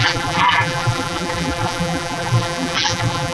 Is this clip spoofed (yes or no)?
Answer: yes